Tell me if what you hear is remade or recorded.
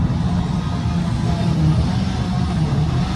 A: recorded